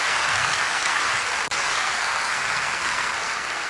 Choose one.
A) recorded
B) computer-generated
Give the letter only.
B